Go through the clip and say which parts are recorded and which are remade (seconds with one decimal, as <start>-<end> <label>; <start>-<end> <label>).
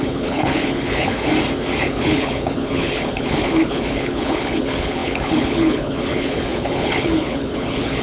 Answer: 0.0-1.3 remade; 1.3-1.8 recorded; 1.8-8.0 remade